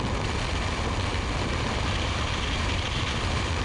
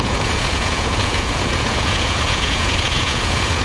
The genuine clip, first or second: first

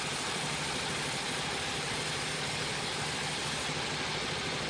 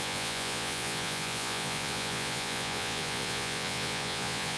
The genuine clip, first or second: first